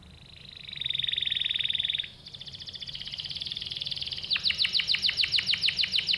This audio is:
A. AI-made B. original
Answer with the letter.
B